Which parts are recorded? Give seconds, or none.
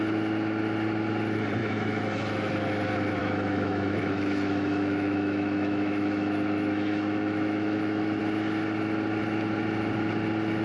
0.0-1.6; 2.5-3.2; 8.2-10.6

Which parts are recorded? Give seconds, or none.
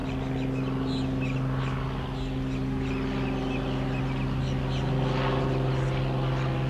0.0-6.7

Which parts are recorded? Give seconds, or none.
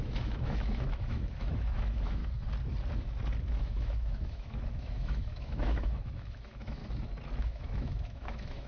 2.2-3.5; 6.8-7.4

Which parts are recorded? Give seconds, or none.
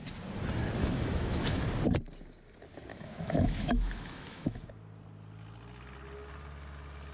0.0-0.8; 1.6-2.9; 4.7-7.1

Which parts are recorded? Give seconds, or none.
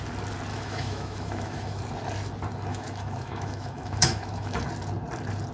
0.0-0.5; 1.8-2.7; 4.6-5.5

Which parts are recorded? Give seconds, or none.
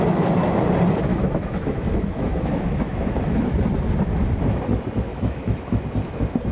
0.0-1.1; 3.5-5.1; 5.8-6.5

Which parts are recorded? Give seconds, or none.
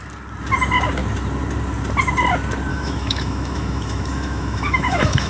0.0-2.7